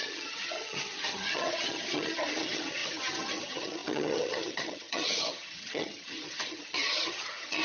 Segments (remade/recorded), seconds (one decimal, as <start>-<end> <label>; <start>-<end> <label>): 0.0-7.6 remade